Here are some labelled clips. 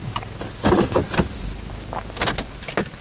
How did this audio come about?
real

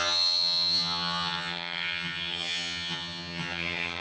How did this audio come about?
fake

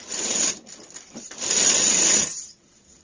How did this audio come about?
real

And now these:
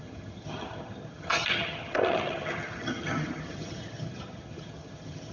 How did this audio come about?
fake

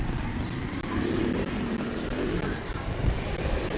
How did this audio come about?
real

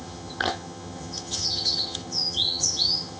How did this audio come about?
fake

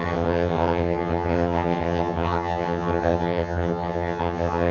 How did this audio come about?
fake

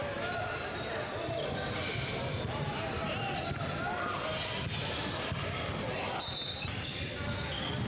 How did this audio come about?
real